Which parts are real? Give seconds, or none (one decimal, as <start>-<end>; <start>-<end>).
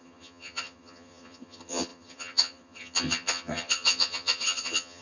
none